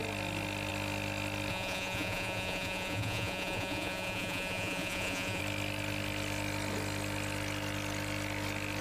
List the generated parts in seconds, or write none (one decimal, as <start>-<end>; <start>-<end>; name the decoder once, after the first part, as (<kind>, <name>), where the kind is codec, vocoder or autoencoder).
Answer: 1.5-5.4 (vocoder, Vocos)